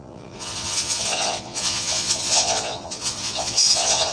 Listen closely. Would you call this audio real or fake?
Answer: fake